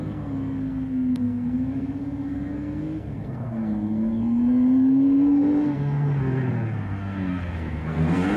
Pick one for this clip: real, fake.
fake